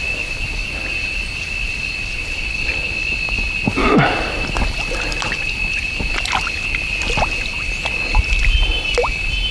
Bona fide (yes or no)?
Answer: yes